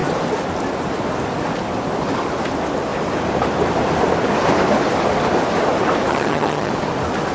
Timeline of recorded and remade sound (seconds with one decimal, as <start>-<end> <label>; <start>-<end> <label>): 0.0-6.1 recorded; 6.1-6.7 remade; 6.7-7.3 recorded